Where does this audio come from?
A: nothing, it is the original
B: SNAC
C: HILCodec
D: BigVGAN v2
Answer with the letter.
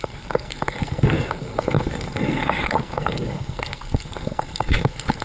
B